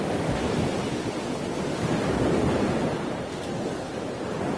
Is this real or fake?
real